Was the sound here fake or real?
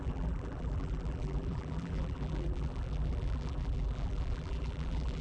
fake